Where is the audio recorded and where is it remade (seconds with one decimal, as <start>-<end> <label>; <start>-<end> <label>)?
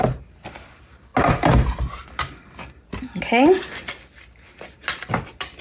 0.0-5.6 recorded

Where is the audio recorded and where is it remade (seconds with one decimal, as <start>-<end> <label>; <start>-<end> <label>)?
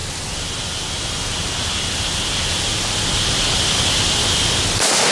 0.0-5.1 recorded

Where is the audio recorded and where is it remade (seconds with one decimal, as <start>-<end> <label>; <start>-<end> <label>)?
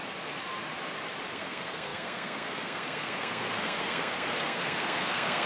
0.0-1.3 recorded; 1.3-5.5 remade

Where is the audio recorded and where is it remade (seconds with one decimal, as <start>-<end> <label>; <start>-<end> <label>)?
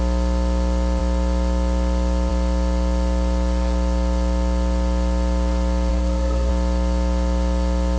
0.0-5.9 recorded; 5.9-6.5 remade; 6.5-8.0 recorded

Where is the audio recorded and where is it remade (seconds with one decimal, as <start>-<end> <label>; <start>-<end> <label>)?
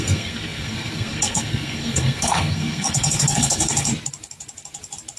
0.0-3.9 remade; 3.9-5.2 recorded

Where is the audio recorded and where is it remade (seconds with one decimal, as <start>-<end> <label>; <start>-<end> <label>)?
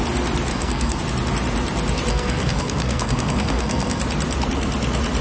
0.0-0.5 recorded; 0.5-1.0 remade; 1.0-2.1 recorded; 2.1-4.0 remade; 4.0-5.2 recorded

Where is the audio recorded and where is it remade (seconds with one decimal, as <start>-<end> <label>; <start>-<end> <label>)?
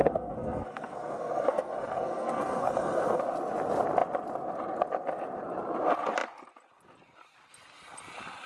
0.0-3.2 remade; 3.2-8.5 recorded